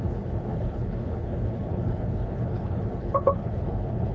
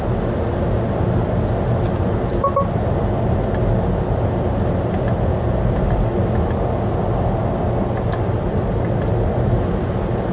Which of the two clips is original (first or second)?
second